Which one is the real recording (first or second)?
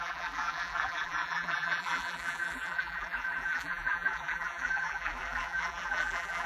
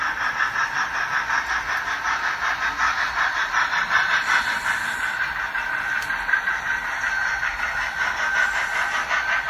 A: second